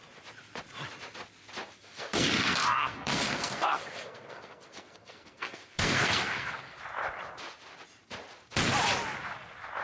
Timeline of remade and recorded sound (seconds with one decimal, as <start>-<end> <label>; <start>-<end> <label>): 0.0-1.8 recorded; 1.8-6.8 remade; 6.8-9.8 recorded